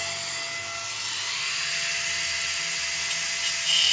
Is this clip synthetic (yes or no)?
no